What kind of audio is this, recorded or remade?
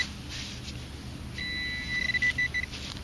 recorded